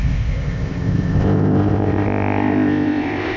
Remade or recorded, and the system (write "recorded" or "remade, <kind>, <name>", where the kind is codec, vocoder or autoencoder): remade, codec, ZipCodec